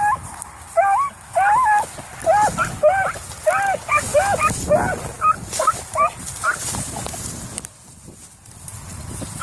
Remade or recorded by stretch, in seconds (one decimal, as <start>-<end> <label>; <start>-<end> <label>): 0.0-9.4 recorded